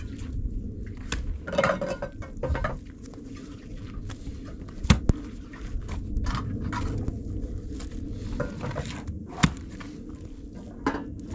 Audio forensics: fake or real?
real